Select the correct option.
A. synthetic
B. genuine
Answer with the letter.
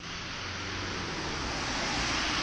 B